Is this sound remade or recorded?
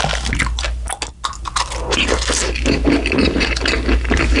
recorded